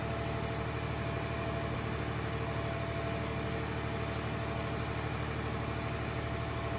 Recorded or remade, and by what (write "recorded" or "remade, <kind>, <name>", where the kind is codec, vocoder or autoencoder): recorded